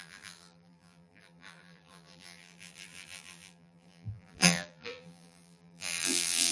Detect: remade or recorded remade